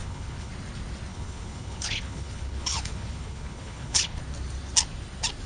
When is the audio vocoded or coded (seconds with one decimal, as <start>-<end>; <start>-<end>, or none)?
0.0-0.5; 1.1-4.2